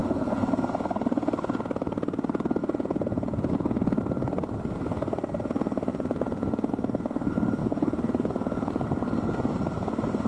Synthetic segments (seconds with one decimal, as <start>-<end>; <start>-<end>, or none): 0.0-0.5; 2.6-4.0; 5.9-6.7; 7.6-8.7